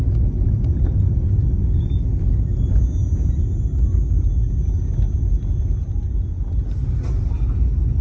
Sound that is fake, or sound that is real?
real